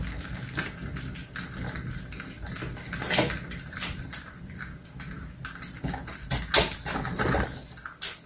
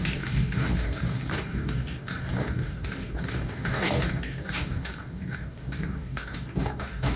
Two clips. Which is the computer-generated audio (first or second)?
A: second